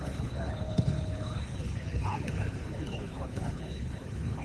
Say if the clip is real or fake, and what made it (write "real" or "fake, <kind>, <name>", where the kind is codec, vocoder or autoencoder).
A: fake, codec, HILCodec